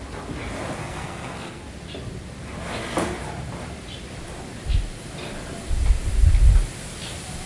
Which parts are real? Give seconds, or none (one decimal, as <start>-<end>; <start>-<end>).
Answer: 0.0-0.8; 1.6-7.5